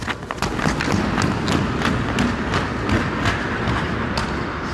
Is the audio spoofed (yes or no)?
no